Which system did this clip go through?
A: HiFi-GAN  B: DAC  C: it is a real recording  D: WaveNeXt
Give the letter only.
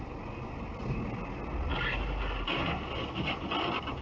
C